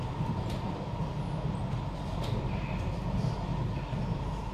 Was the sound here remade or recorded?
recorded